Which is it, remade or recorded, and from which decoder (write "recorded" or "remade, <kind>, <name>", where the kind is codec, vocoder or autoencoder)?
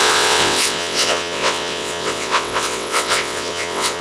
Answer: remade, vocoder, WaveNeXt